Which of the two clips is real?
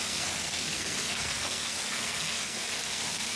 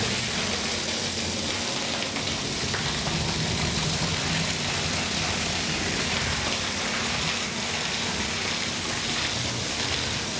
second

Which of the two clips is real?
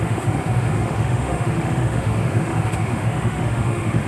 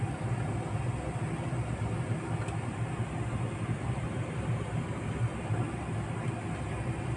second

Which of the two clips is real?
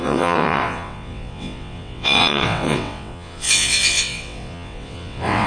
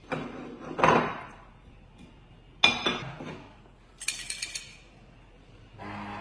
second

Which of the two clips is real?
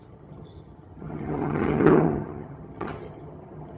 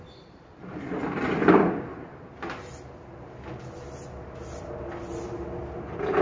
second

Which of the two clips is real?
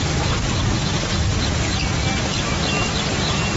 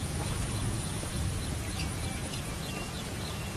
first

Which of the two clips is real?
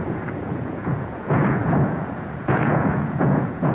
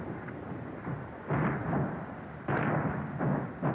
second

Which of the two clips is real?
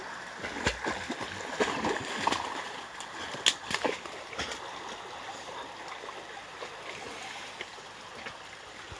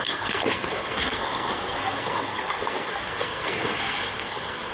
first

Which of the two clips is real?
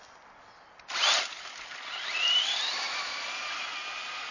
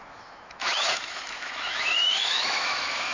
first